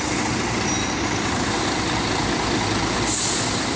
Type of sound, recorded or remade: recorded